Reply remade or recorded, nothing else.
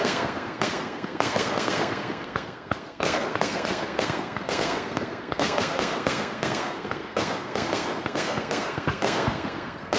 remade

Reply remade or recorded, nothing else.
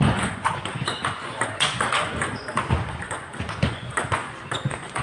remade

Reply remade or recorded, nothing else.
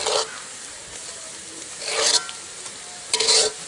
recorded